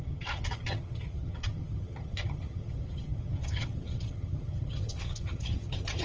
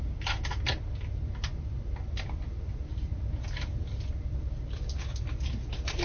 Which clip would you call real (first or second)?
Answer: second